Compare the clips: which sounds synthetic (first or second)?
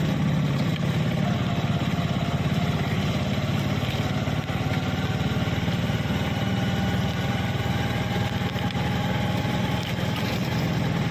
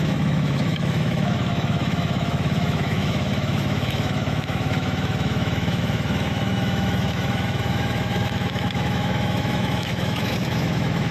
second